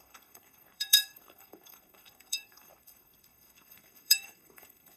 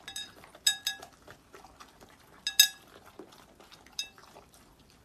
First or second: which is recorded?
second